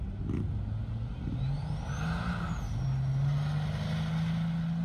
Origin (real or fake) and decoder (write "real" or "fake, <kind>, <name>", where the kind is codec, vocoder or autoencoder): real